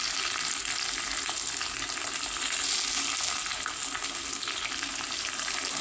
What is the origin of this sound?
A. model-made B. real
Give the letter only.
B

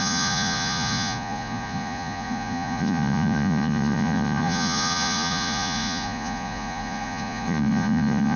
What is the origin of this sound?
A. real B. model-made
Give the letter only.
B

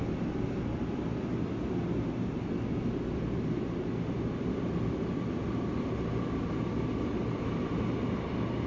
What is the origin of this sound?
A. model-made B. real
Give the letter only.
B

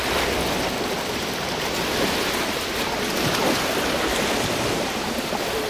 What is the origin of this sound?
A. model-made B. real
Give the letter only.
B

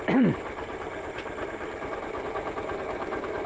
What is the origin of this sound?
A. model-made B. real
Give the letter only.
B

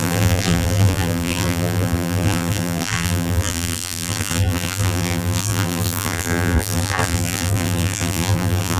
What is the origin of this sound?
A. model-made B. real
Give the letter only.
A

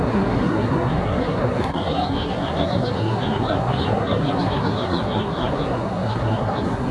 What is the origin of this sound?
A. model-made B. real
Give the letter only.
A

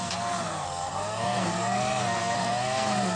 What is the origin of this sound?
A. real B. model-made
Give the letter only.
B